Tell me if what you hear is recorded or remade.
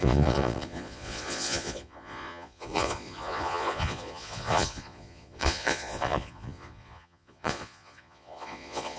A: remade